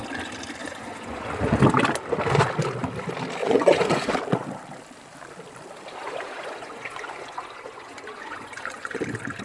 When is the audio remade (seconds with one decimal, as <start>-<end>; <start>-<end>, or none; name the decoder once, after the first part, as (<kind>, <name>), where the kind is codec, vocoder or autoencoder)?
0.6-1.6 (vocoder, Vocos); 3.4-4.1; 6.0-9.0

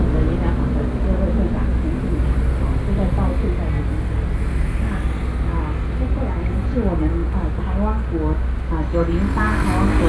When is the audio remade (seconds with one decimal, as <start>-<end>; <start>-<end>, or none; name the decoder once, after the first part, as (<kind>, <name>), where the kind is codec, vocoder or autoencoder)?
none